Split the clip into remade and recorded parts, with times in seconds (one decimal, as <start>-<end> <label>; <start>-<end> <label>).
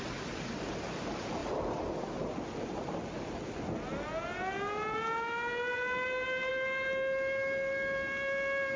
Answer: 0.0-8.8 recorded